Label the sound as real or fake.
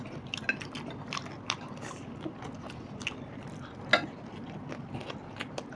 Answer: real